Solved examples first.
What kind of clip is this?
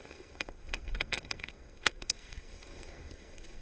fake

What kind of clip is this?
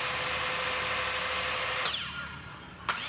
real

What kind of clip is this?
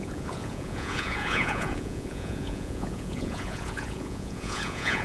fake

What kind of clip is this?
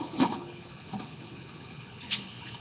fake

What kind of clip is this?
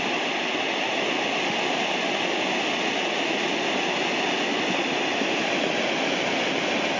real